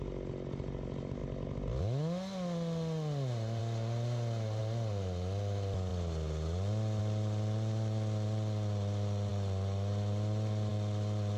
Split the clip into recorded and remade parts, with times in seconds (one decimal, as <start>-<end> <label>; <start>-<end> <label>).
0.0-11.4 recorded